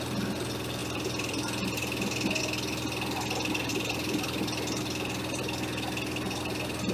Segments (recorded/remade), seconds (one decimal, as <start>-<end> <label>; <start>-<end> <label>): 0.0-0.8 recorded; 0.8-2.4 remade; 2.4-3.7 recorded; 3.7-4.8 remade; 4.8-6.9 recorded